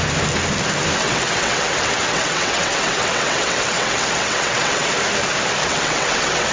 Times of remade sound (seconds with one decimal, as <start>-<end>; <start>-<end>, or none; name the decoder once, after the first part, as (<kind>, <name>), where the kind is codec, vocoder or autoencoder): 1.0-4.9 (vocoder, WaveNeXt); 5.6-6.5